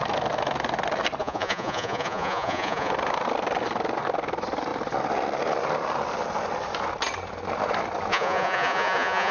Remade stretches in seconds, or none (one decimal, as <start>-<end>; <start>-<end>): 1.2-2.9; 8.1-9.3